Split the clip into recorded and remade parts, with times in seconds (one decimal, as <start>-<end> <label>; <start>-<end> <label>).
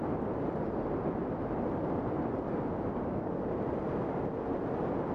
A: 0.0-5.1 recorded